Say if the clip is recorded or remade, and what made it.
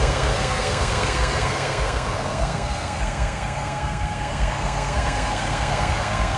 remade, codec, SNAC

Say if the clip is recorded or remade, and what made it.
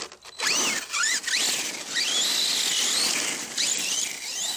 recorded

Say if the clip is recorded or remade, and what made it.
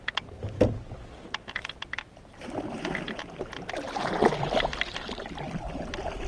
recorded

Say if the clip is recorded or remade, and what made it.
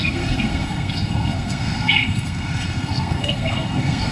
remade, codec, SNAC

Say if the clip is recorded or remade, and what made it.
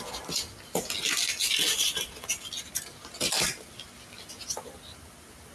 recorded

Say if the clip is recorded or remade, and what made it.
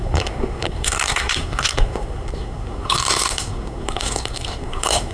remade, codec, SNAC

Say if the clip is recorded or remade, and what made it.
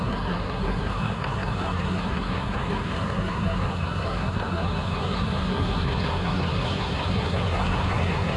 remade, codec, SNAC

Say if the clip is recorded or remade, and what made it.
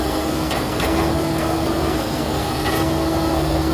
remade, codec, SNAC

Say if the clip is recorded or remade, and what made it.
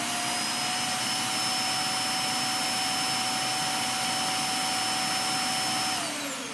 recorded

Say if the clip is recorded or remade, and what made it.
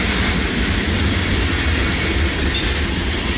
recorded